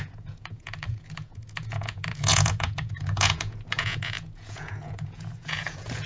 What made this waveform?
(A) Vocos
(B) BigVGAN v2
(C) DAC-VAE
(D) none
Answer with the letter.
A